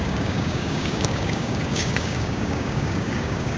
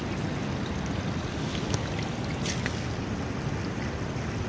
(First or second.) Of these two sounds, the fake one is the first